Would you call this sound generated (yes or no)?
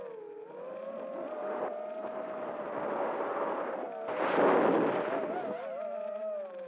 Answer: no